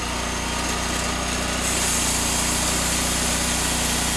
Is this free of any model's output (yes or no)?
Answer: yes